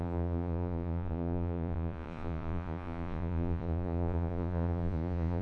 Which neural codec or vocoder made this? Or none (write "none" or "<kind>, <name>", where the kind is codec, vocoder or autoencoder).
vocoder, Vocos